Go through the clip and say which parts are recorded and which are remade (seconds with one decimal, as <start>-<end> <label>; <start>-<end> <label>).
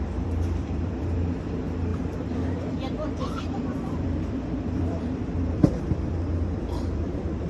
0.0-7.5 remade